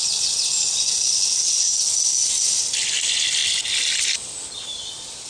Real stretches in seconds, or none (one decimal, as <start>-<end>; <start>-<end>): 0.0-5.3